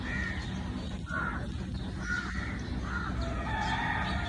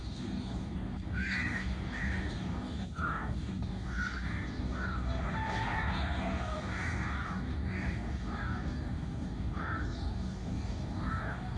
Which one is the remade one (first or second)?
second